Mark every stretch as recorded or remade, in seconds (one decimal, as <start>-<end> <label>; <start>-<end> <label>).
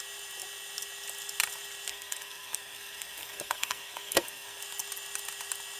0.0-1.9 recorded; 1.9-4.6 remade; 4.6-5.8 recorded